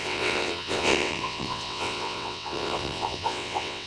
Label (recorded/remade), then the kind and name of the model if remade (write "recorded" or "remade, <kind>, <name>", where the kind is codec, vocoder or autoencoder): remade, vocoder, WaveNeXt